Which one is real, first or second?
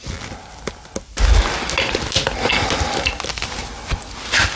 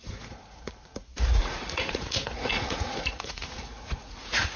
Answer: first